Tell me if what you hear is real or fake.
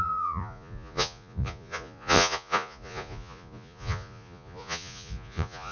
fake